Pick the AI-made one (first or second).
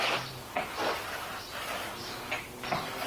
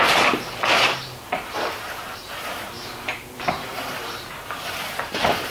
second